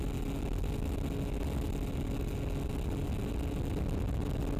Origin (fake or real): real